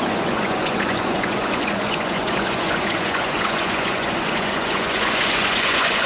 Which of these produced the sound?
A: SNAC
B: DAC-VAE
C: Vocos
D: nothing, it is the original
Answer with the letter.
C